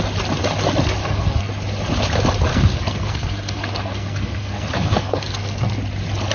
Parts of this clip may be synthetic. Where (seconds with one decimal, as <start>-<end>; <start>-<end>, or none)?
1.0-1.5; 2.5-5.8